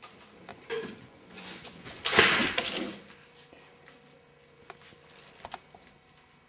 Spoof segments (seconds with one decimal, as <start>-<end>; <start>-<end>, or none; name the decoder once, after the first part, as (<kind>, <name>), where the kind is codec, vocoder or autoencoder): 0.5-2.0 (vocoder, Vocos)